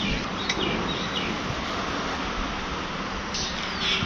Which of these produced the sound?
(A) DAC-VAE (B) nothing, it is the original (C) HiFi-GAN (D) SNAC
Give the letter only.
B